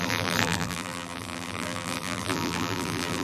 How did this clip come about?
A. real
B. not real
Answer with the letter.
B